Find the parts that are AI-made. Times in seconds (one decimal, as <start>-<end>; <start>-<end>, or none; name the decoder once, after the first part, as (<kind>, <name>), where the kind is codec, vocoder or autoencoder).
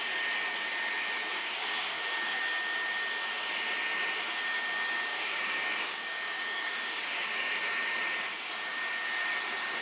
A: 1.3-2.4 (codec, DAC); 5.1-7.9